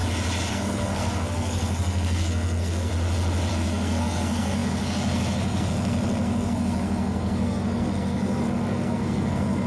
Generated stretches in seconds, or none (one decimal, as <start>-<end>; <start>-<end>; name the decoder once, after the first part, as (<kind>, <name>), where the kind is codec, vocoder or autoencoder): 0.5-2.9 (codec, SNAC); 3.5-9.7